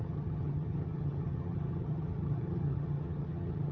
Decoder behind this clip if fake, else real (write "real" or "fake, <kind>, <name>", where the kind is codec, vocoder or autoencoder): fake, vocoder, HiFi-GAN